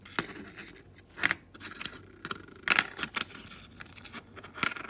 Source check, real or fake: real